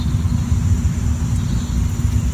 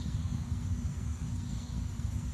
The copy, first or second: second